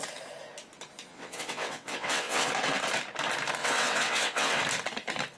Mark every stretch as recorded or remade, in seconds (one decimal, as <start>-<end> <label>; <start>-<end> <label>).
0.0-1.1 recorded; 1.1-2.5 remade; 2.5-3.6 recorded; 3.6-4.6 remade; 4.6-5.4 recorded